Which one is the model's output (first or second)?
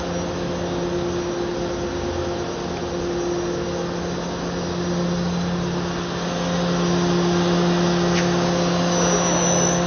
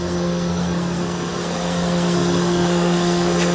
second